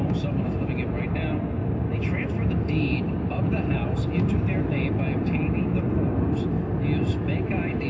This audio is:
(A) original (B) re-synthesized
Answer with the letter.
A